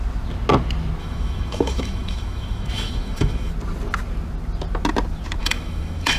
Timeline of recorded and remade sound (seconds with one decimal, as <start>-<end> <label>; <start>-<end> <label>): 0.0-1.0 recorded; 1.0-3.5 remade; 3.5-5.4 recorded; 5.4-6.2 remade